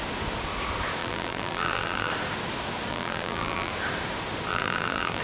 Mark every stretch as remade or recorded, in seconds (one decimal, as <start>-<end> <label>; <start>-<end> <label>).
0.0-1.0 recorded; 1.0-2.1 remade; 2.1-2.9 recorded; 2.9-3.7 remade; 3.7-4.5 recorded; 4.5-5.2 remade